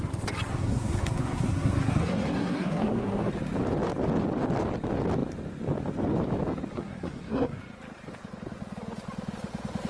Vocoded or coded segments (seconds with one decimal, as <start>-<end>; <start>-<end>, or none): 0.5-3.3; 6.7-7.6